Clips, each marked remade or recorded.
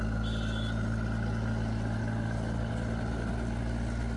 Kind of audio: recorded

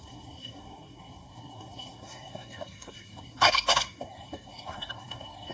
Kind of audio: remade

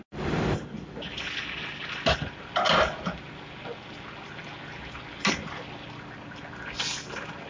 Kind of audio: recorded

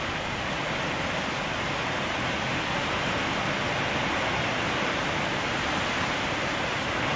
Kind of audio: recorded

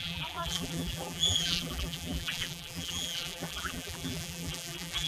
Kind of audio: remade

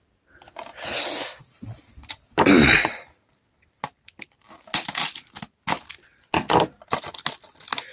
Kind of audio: recorded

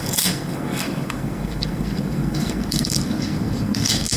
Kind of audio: remade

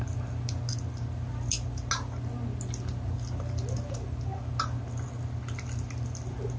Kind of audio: recorded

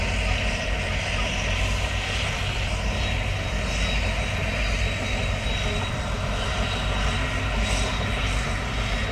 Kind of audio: recorded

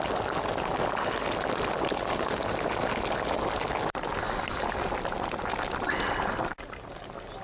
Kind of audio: recorded